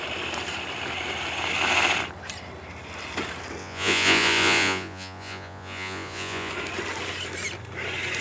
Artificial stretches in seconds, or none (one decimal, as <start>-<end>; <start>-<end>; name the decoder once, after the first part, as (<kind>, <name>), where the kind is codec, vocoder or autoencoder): 3.6-6.5 (vocoder, Vocos)